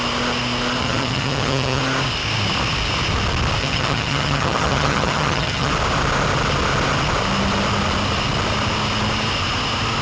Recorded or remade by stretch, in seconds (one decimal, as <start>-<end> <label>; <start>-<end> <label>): 0.0-0.8 recorded; 0.8-1.8 remade; 1.8-3.6 recorded; 3.6-5.7 remade; 5.7-10.0 recorded